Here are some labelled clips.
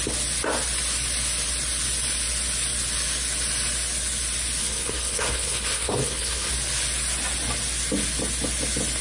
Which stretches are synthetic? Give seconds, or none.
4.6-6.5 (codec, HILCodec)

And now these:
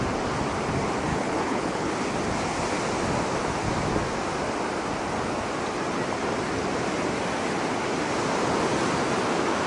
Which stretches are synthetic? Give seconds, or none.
1.1-1.9 (codec, HILCodec)

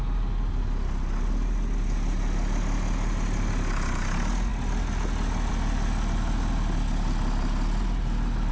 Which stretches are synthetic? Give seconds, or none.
none

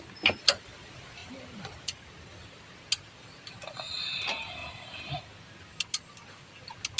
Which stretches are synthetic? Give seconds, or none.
none